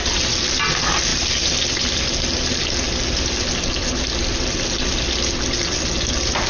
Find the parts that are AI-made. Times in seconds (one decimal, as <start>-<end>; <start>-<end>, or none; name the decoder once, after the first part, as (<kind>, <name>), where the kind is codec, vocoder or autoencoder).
none